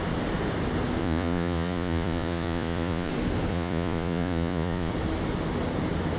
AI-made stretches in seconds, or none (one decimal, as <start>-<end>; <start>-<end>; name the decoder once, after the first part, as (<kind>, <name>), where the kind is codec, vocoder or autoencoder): 1.0-3.1 (vocoder, Vocos); 3.5-4.9